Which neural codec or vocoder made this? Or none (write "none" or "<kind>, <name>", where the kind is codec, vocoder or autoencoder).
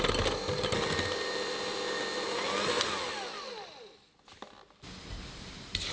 none